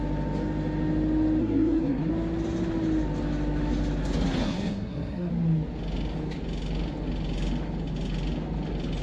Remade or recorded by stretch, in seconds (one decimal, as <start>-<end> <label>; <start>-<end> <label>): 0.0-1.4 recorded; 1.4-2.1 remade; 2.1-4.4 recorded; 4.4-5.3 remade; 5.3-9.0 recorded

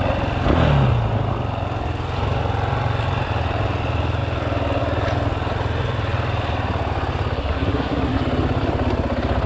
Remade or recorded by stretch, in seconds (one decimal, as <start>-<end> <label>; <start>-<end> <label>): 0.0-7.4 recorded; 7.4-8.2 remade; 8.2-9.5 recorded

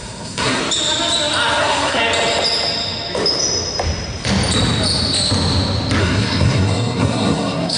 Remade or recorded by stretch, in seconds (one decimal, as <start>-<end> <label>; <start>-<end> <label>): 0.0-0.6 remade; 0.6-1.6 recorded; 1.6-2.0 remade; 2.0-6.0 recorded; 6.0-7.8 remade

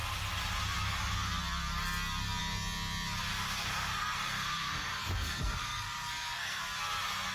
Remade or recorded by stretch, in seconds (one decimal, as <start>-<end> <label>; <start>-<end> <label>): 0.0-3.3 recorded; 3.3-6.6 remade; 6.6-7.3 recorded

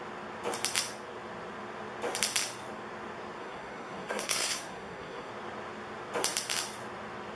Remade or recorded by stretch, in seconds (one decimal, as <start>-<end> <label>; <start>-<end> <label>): 0.0-3.4 recorded; 3.4-5.3 remade; 5.3-7.4 recorded

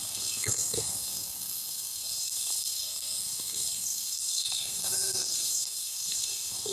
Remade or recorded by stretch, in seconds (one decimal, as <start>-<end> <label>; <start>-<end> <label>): 0.0-6.7 remade

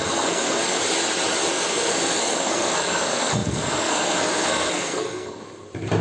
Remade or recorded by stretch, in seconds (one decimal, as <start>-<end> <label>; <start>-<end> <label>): 0.0-0.8 remade; 0.8-1.5 recorded; 1.5-5.4 remade; 5.4-6.0 recorded